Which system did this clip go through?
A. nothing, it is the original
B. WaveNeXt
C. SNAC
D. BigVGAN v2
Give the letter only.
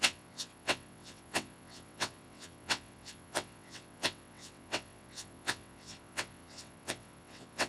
B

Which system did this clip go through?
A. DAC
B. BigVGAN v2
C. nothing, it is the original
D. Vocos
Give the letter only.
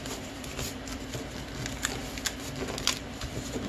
C